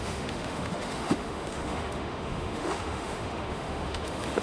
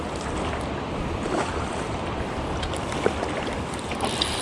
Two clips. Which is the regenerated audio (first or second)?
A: first